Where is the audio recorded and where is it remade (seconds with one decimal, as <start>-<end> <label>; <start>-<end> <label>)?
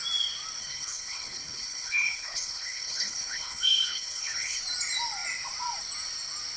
0.0-0.6 recorded; 0.6-4.6 remade; 4.6-6.6 recorded